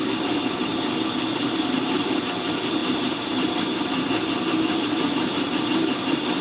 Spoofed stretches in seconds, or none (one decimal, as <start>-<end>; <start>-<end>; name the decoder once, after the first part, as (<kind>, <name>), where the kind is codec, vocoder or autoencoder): 0.0-0.7 (vocoder, BigVGAN v2); 1.4-6.4